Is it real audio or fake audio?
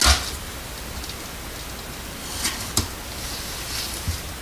real